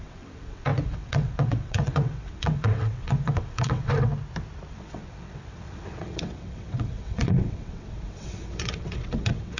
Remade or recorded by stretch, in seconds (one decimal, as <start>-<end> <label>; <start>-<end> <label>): 0.0-4.1 remade; 4.1-4.7 recorded; 4.7-9.6 remade